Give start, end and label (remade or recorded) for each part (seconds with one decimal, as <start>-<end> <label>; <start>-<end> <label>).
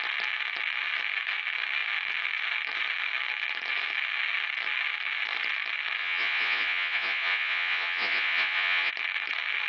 0.0-6.0 recorded; 6.0-8.9 remade; 8.9-9.7 recorded